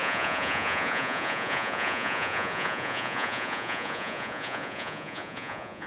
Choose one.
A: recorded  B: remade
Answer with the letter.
B